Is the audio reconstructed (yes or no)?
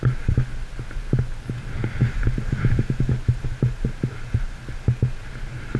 no